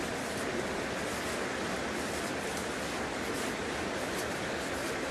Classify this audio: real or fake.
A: real